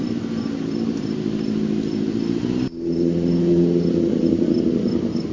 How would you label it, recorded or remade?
recorded